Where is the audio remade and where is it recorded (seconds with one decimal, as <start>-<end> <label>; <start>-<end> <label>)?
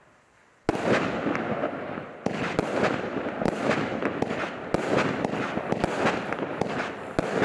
0.0-7.4 recorded